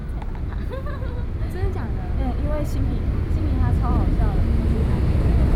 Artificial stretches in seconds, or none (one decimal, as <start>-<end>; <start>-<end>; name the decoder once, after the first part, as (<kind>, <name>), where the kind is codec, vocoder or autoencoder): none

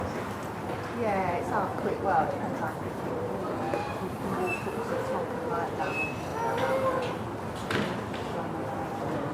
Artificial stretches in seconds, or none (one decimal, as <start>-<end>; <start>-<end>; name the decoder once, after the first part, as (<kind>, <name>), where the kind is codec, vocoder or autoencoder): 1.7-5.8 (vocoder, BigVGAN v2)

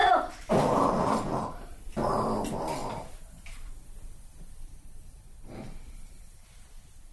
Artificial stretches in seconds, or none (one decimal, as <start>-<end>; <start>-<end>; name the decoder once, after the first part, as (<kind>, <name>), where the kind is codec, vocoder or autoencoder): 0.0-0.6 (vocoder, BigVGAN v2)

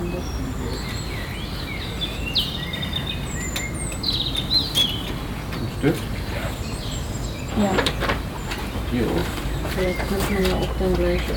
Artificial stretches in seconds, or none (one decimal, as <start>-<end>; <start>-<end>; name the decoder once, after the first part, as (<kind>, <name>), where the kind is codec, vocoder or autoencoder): 9.2-10.4 (vocoder, BigVGAN v2)